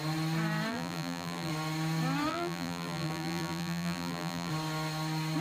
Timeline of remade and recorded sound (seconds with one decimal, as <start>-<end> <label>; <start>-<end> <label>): 0.0-0.7 recorded; 0.7-1.5 remade; 1.5-2.3 recorded; 2.3-4.5 remade; 4.5-5.4 recorded